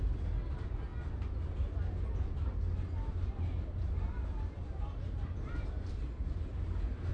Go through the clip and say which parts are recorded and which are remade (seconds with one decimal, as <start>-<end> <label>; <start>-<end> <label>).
0.0-7.1 recorded